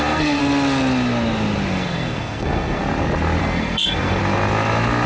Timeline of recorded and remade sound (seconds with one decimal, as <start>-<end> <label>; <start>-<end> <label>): 0.0-0.4 remade; 0.4-1.7 recorded; 1.7-2.8 remade; 2.8-3.4 recorded; 3.4-4.2 remade; 4.2-5.1 recorded